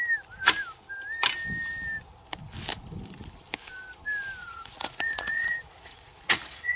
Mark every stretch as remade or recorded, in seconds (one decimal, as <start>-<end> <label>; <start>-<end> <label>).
0.0-4.4 recorded; 4.4-6.8 remade